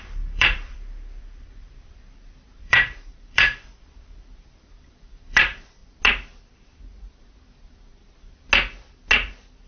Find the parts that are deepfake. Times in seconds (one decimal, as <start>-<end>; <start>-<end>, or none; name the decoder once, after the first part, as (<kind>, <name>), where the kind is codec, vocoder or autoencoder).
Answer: 0.0-5.8 (vocoder, BigVGAN v2)